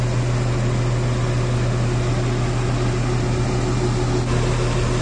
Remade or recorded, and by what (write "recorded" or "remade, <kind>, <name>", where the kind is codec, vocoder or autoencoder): recorded